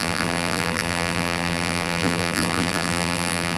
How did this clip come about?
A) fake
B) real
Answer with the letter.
A